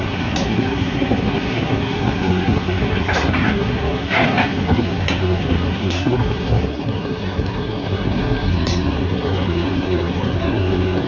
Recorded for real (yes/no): no